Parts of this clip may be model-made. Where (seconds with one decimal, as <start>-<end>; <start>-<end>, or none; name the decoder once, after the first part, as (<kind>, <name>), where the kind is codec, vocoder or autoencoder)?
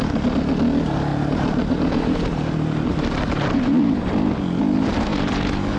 1.1-4.1 (vocoder, BigVGAN v2)